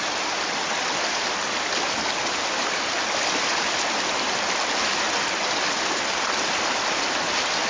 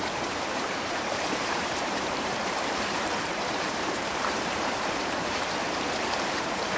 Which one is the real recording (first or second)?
first